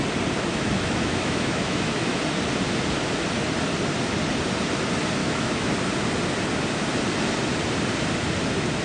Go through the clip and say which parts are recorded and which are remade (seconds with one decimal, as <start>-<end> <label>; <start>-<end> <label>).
0.0-0.5 recorded; 0.5-2.2 remade; 2.2-5.2 recorded; 5.2-5.7 remade; 5.7-8.8 recorded

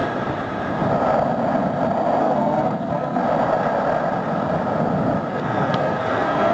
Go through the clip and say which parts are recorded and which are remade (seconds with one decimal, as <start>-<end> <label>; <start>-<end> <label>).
0.0-2.2 recorded; 2.2-3.2 remade; 3.2-5.3 recorded; 5.3-6.5 remade

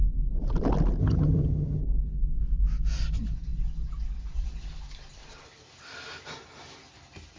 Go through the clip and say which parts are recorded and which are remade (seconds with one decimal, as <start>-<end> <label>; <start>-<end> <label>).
0.0-1.0 recorded; 1.0-1.8 remade; 1.8-7.4 recorded

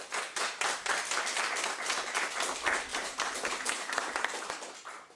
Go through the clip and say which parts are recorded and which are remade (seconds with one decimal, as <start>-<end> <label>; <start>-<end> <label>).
0.0-2.9 recorded; 2.9-4.5 remade; 4.5-5.2 recorded